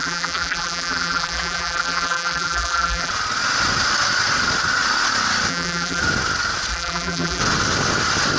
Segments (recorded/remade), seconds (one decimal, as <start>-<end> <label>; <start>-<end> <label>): 0.0-3.1 remade; 3.1-5.5 recorded; 5.5-6.0 remade; 6.0-6.7 recorded; 6.7-7.4 remade; 7.4-8.4 recorded